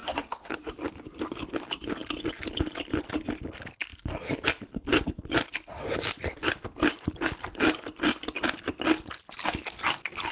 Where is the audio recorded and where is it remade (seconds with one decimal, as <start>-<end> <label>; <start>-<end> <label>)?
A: 0.0-0.7 remade; 0.7-10.3 recorded

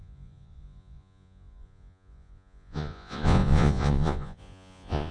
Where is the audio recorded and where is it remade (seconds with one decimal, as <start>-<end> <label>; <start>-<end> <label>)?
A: 0.0-5.1 remade

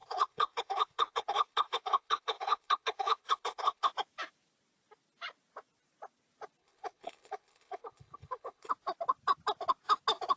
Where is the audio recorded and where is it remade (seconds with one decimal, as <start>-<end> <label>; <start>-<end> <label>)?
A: 0.0-3.9 remade; 3.9-6.6 recorded; 6.6-8.7 remade; 8.7-10.4 recorded

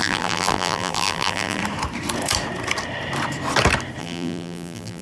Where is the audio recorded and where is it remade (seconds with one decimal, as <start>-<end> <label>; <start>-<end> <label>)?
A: 0.0-1.6 remade; 1.6-4.0 recorded; 4.0-5.0 remade

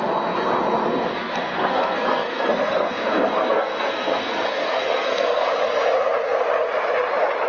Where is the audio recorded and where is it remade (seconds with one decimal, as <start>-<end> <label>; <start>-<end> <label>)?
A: 0.0-1.1 recorded; 1.1-5.5 remade; 5.5-7.5 recorded

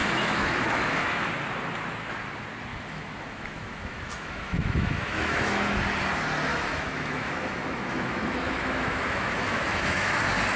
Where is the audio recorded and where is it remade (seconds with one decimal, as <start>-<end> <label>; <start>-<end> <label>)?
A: 0.0-1.3 remade; 1.3-2.7 recorded; 2.7-5.8 remade; 5.8-6.5 recorded; 6.5-10.2 remade; 10.2-10.6 recorded

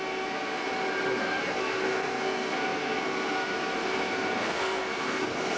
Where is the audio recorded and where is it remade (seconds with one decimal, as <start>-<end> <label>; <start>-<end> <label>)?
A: 0.0-0.7 remade; 0.7-1.2 recorded; 1.2-5.6 remade

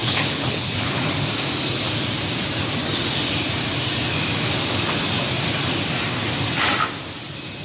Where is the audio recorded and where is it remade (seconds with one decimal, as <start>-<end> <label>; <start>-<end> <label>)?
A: 0.0-1.1 remade; 1.1-7.6 recorded